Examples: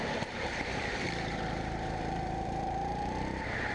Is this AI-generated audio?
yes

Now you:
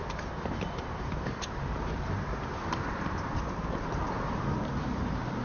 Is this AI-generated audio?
yes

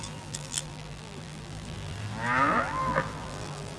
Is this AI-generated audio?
yes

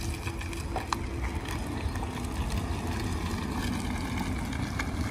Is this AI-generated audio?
no